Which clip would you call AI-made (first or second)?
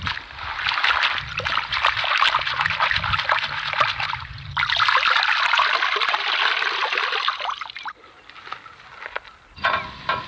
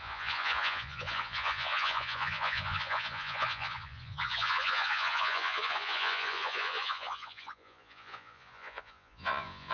second